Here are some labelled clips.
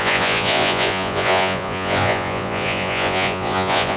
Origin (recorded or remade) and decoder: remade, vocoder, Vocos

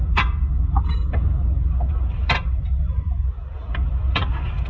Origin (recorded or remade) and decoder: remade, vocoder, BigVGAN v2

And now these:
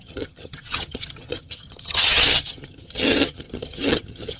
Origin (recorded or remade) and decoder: remade, vocoder, HiFi-GAN